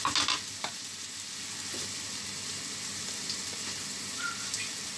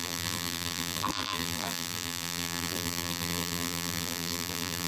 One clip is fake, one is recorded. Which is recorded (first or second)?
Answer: first